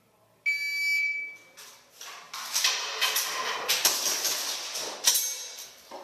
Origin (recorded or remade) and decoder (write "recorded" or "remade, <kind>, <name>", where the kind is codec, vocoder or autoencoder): recorded